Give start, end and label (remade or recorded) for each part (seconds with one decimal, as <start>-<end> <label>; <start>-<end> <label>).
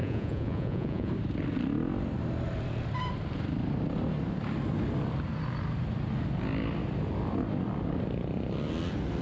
0.0-1.1 remade; 1.1-9.2 recorded